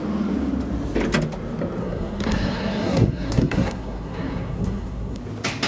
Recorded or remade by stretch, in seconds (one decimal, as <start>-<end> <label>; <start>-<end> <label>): 0.0-1.8 recorded; 1.8-5.2 remade; 5.2-5.7 recorded